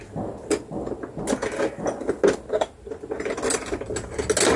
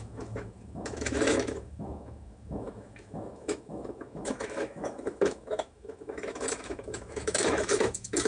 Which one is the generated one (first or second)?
second